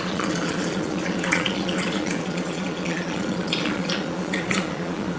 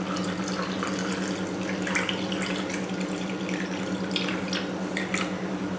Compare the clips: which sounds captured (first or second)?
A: second